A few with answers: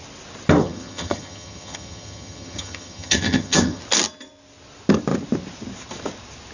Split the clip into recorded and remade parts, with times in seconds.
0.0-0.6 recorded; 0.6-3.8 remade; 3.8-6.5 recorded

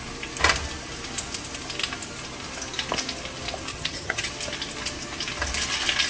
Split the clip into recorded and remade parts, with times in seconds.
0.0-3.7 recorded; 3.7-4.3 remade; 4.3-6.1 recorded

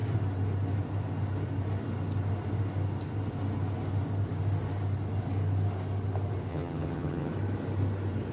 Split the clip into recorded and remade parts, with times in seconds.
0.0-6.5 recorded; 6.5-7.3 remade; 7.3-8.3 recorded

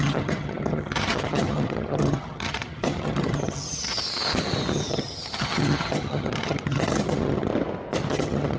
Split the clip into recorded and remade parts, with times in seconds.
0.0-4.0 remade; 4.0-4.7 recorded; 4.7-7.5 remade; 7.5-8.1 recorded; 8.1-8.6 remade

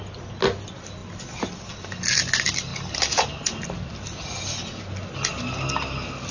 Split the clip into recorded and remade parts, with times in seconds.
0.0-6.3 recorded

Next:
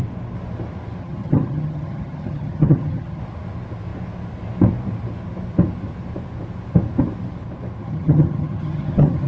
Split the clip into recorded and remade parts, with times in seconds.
0.0-1.0 recorded; 1.0-3.2 remade; 3.2-7.8 recorded; 7.8-9.3 remade